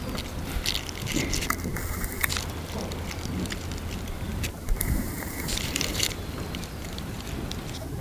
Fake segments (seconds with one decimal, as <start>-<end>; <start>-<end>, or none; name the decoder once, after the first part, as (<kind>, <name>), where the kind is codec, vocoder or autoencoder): 4.3-7.3 (vocoder, BigVGAN v2)